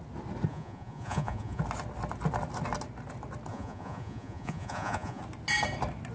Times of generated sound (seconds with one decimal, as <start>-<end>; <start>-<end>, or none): 0.5-1.6; 3.5-5.2